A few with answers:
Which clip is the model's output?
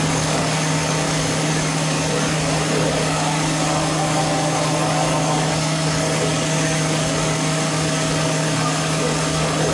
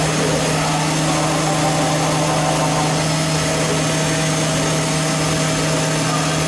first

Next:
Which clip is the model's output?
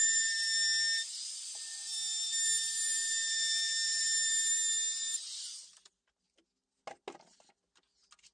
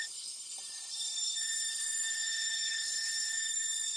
second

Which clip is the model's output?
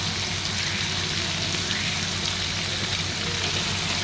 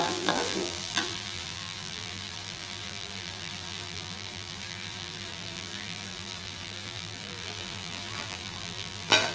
second